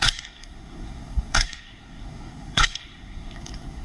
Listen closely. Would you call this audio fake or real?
fake